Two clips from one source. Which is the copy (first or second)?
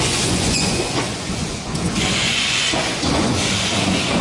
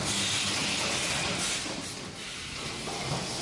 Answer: first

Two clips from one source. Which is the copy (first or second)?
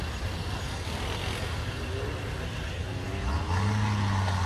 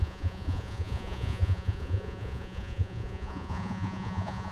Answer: second